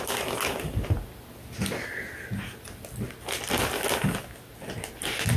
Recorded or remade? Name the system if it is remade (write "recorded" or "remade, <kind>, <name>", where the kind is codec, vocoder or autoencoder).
recorded